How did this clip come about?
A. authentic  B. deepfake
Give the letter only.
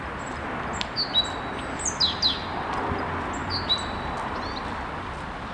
A